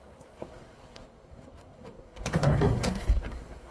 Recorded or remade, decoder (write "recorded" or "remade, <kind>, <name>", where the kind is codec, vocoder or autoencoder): remade, codec, SNAC